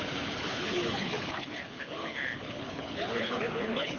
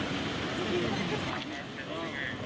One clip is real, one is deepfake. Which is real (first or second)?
second